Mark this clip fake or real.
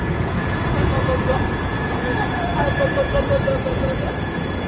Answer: fake